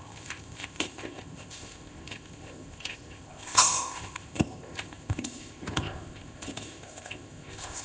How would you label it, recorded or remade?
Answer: remade